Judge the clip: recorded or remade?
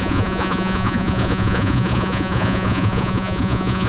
remade